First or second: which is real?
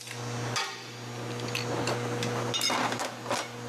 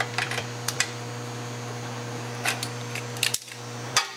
first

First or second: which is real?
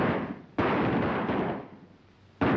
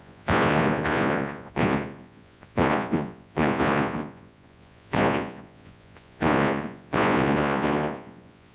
first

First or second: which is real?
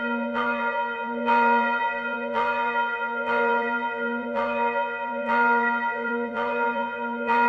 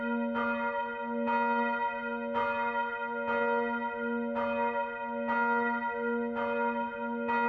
second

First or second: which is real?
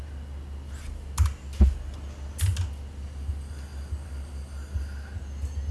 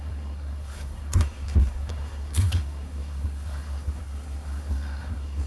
first